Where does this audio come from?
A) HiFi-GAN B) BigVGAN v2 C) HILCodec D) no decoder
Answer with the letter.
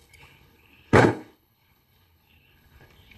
C